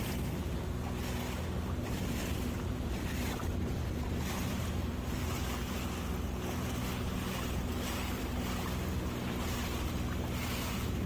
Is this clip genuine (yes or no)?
yes